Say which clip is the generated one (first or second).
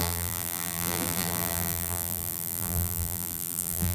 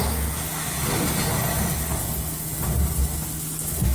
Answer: first